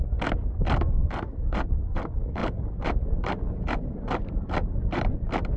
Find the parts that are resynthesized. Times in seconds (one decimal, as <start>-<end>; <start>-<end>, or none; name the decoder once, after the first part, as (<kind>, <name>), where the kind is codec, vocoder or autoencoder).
2.4-5.1 (vocoder, BigVGAN v2)